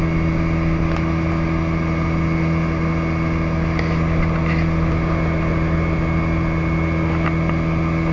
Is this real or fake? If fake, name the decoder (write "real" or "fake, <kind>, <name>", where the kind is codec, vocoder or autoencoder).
real